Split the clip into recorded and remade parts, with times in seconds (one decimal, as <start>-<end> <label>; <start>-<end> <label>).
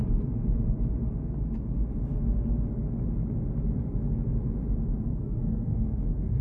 0.0-5.1 recorded; 5.1-6.4 remade